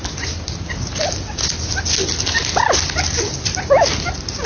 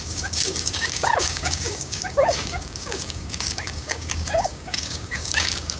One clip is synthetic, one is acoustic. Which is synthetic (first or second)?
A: second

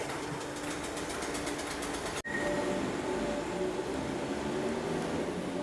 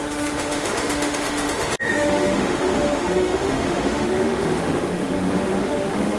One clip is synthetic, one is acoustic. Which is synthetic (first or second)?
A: second